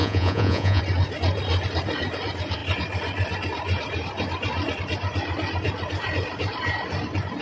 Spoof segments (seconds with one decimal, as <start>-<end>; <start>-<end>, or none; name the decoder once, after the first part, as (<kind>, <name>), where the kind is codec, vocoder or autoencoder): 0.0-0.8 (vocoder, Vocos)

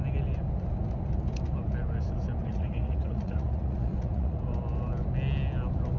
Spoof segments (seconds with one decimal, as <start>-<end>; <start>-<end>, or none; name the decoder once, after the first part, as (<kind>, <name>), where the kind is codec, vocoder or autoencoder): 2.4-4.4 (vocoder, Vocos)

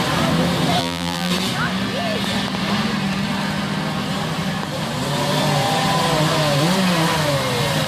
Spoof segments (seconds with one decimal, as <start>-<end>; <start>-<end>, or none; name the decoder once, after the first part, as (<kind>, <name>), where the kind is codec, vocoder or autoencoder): 0.8-1.3 (vocoder, BigVGAN v2)

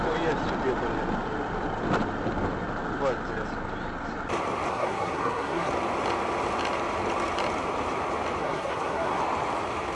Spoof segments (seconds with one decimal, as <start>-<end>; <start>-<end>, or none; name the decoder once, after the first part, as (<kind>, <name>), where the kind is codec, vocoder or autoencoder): 4.7-5.7 (codec, SNAC); 8.4-9.2

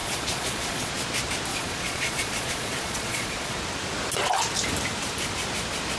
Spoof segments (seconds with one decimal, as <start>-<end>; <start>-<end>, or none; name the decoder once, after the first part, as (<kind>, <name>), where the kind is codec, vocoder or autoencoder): 0.0-0.9 (vocoder, Vocos); 1.5-3.6

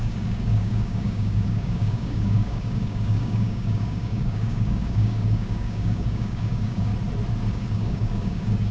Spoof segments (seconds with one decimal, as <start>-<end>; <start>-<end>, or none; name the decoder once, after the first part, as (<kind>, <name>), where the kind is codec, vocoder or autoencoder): 0.0-6.9 (codec, DAC); 7.5-8.7

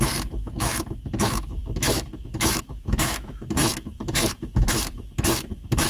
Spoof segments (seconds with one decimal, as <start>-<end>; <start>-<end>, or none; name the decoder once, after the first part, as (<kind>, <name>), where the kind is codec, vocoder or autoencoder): 0.0-5.9 (autoencoder, DAC-VAE)